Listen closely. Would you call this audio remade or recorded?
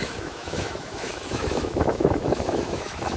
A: remade